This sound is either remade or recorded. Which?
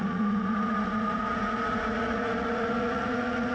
remade